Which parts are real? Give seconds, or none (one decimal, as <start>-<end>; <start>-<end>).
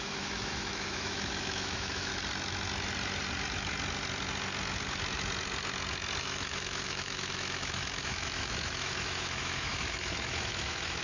2.1-6.2